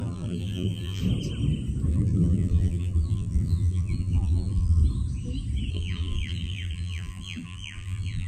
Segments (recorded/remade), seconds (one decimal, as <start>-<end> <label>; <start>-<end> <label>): 0.0-1.0 remade; 1.0-1.9 recorded; 1.9-4.8 remade; 4.8-5.7 recorded; 5.7-8.3 remade